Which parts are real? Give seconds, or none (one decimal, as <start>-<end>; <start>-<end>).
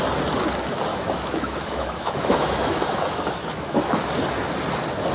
0.0-0.9; 4.0-5.1